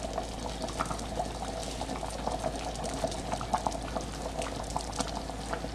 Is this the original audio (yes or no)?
yes